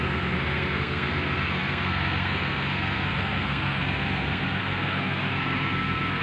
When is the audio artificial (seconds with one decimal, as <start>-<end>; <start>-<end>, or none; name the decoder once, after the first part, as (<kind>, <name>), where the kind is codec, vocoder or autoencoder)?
0.0-6.2 (codec, SNAC)